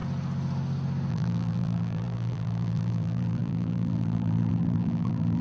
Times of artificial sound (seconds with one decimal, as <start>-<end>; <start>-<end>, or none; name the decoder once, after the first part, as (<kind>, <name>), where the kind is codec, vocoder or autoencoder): 1.1-5.4 (vocoder, BigVGAN v2)